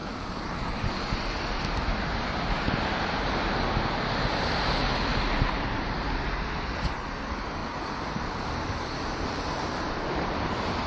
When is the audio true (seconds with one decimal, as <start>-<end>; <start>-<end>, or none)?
none